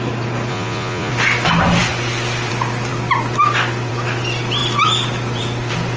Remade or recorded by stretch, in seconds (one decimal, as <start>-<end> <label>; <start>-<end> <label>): 0.0-0.5 recorded; 0.5-1.1 remade; 1.1-6.0 recorded